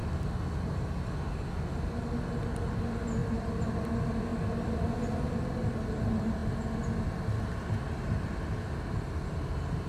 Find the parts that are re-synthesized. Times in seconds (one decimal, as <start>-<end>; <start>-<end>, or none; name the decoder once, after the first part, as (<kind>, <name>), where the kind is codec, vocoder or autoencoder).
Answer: none